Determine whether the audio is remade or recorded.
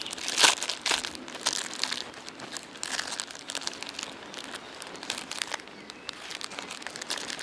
recorded